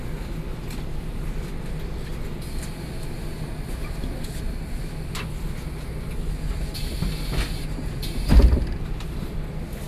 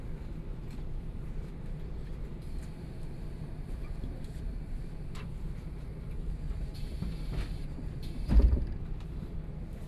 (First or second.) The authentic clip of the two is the first